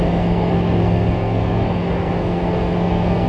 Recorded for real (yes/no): no